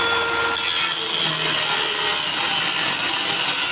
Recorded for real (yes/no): yes